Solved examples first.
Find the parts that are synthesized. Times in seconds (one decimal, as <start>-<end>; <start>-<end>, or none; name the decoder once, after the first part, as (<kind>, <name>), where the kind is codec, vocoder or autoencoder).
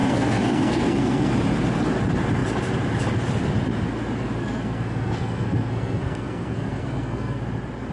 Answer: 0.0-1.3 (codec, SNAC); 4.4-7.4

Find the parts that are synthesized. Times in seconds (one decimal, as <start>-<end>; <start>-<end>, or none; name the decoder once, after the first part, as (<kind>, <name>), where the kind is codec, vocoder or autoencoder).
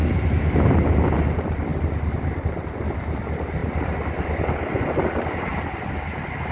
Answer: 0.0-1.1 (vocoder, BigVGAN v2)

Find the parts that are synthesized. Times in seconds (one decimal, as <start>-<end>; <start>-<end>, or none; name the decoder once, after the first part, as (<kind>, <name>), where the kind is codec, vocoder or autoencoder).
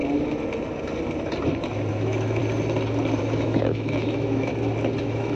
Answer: 1.9-2.4 (autoencoder, DAC-VAE); 3.2-4.5; 5.0-5.4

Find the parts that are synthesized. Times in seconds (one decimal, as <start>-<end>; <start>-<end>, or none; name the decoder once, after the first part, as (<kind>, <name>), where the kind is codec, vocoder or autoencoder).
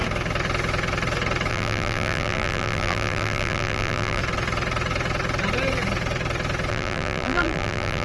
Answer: 1.5-4.2 (vocoder, BigVGAN v2); 6.7-8.0